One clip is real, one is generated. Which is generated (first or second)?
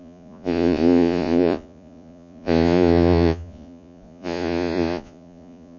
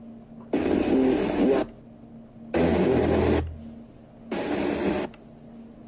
first